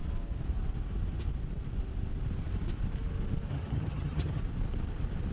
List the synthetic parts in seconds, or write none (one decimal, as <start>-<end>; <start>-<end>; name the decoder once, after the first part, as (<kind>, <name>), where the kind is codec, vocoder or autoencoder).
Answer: 3.5-4.4 (vocoder, HiFi-GAN)